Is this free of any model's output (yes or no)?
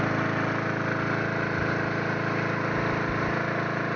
yes